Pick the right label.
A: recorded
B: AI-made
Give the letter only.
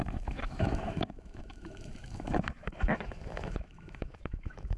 B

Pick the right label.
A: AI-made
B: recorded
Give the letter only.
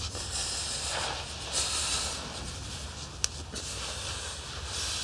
B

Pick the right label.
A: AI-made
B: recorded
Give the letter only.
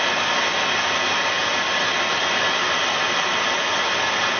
B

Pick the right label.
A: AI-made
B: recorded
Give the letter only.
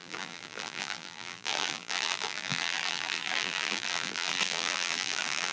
A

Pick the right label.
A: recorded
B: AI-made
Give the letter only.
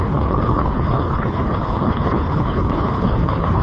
B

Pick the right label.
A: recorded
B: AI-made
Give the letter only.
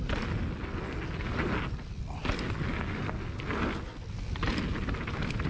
A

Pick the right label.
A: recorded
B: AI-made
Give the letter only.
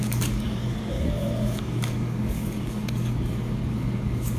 B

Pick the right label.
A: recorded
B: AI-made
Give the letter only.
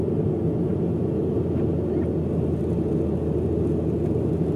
A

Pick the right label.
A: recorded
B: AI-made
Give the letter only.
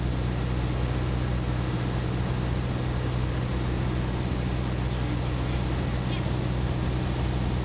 A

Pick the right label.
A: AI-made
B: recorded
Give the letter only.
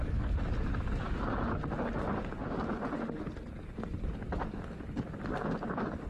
B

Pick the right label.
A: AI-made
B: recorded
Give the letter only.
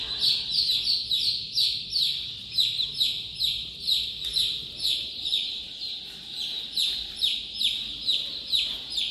A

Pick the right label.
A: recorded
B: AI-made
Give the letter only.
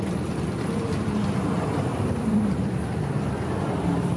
B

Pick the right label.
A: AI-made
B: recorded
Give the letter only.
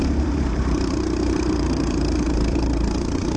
A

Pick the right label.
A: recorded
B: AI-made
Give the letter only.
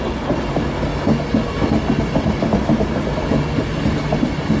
A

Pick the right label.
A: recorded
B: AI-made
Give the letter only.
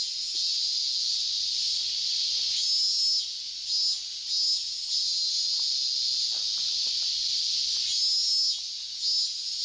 A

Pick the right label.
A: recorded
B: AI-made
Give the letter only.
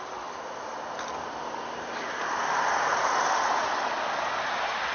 A